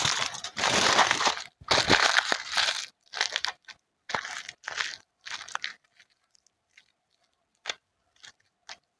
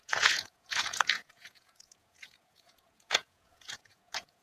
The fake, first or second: second